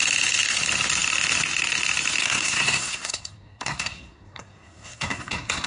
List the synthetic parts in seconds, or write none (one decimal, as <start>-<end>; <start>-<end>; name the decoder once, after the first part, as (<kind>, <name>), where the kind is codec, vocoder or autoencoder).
2.2-5.7 (codec, SNAC)